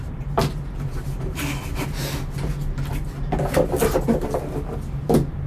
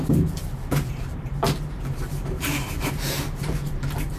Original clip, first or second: first